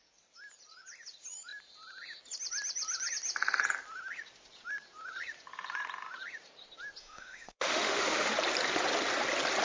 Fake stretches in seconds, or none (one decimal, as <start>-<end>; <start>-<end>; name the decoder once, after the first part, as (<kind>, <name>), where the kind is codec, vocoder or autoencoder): 7.0-8.3 (autoencoder, DAC-VAE)